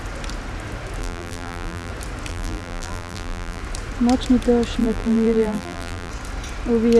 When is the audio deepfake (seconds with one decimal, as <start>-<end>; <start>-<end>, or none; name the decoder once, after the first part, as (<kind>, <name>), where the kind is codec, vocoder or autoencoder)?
1.0-1.9 (vocoder, BigVGAN v2); 2.3-3.6; 4.8-6.1